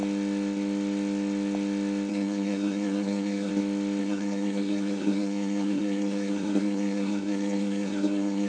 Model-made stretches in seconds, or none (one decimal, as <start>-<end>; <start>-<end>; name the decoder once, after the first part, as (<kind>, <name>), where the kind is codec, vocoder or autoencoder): 2.1-3.5 (codec, SNAC); 4.0-8.5